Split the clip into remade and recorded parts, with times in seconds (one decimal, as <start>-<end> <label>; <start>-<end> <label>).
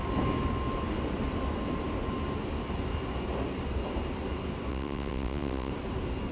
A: 0.0-4.7 recorded; 4.7-5.7 remade; 5.7-6.3 recorded